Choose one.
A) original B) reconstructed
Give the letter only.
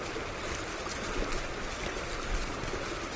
A